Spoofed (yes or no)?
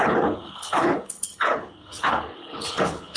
yes